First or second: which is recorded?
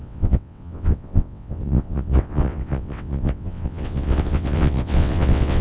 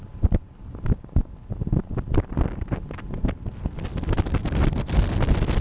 second